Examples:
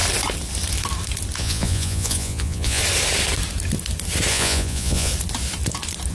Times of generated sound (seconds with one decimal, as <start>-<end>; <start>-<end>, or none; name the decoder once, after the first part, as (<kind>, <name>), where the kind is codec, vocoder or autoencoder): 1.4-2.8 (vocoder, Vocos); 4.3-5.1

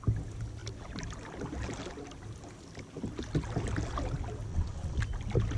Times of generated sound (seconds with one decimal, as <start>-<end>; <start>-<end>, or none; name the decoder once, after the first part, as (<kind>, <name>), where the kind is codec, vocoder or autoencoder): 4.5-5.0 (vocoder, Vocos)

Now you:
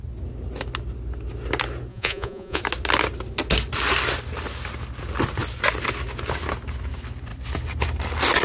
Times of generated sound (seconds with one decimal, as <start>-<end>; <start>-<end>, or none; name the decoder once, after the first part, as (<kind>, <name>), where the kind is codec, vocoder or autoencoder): 1.9-2.6 (vocoder, Vocos)